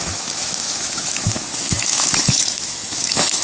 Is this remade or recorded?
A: remade